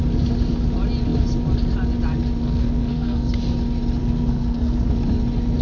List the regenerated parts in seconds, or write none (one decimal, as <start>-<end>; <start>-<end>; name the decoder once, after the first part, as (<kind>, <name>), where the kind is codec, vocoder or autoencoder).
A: 2.4-3.3 (codec, SNAC); 4.0-4.9

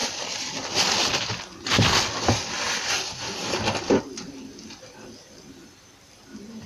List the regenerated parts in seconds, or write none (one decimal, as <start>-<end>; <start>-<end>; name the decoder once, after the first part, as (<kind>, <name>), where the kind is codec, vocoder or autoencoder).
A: none

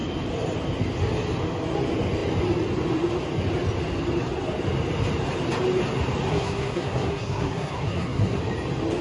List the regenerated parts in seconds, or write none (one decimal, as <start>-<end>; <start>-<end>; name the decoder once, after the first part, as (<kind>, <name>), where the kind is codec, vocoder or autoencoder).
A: 6.3-8.4 (codec, SNAC)

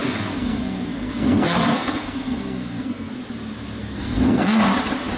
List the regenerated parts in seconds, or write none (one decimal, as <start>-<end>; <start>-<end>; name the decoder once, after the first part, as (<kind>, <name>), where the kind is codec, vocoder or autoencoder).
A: 0.0-3.1 (codec, SNAC); 3.8-4.6